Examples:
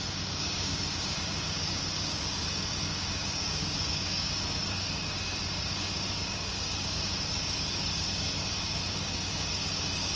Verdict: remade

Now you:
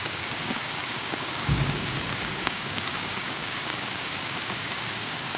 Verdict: remade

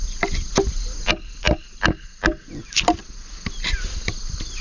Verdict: recorded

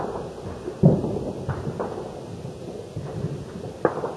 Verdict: recorded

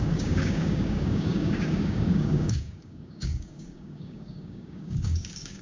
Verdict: remade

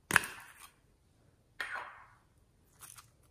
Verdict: recorded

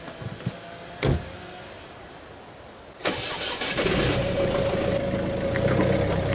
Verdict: recorded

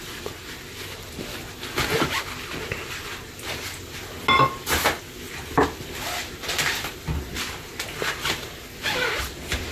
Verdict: recorded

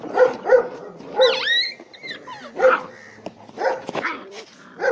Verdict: recorded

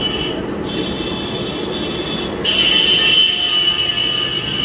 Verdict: recorded